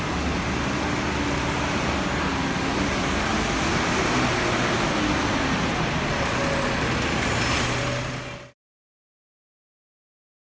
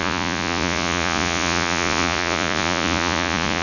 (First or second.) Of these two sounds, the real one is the first